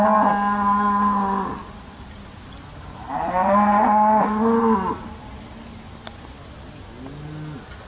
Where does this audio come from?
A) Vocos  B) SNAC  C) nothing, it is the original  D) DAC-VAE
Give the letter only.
C